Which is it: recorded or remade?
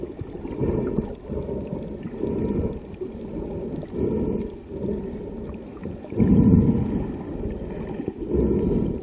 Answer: recorded